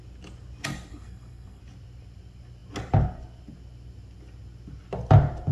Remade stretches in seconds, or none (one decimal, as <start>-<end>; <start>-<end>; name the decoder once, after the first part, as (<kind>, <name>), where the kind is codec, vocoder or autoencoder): 0.9-1.6 (codec, SNAC)